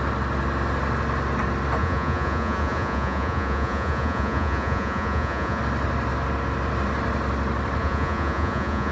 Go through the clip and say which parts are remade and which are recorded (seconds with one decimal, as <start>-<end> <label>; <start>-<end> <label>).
0.0-1.8 recorded; 1.8-5.6 remade; 5.6-7.8 recorded; 7.8-8.9 remade